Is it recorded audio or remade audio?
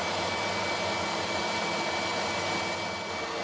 recorded